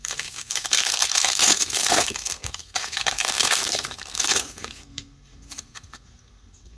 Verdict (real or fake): fake